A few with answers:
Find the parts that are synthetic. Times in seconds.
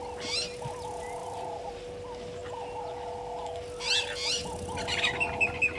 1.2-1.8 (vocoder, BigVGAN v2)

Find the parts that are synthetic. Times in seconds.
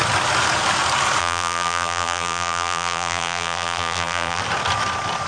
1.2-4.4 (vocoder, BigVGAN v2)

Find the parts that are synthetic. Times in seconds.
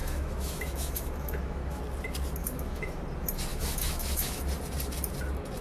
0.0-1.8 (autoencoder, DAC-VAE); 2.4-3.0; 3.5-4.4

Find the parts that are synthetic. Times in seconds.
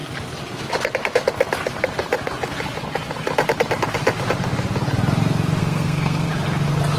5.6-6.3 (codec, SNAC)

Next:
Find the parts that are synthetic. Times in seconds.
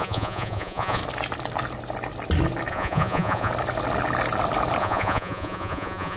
0.0-1.0 (vocoder, Vocos); 2.7-3.5; 4.8-6.2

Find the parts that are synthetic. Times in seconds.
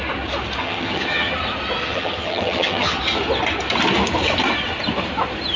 0.6-1.3 (vocoder, HiFi-GAN); 1.8-3.0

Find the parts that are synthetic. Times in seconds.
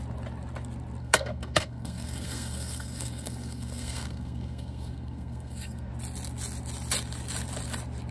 1.0-5.9 (codec, SNAC)